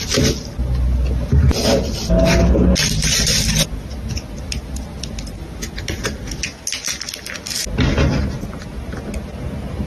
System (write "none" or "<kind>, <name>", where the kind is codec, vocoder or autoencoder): none